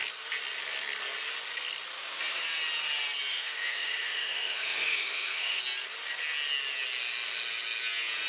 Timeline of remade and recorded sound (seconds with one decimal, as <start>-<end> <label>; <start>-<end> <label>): 0.0-3.3 recorded; 3.3-5.6 remade; 5.6-8.3 recorded